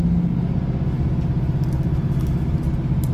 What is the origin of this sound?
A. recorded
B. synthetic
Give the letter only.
A